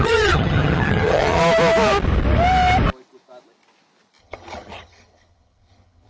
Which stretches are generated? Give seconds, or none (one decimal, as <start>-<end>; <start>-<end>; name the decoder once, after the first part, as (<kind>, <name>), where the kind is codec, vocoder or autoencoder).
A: 0.0-1.4 (vocoder, HiFi-GAN); 4.2-6.1